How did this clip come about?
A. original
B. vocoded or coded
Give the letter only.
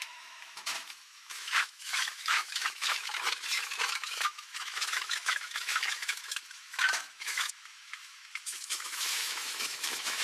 B